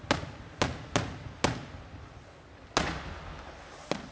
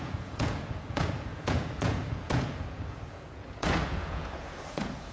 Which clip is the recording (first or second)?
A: first